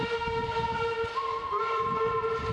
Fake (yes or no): no